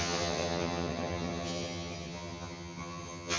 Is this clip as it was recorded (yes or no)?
no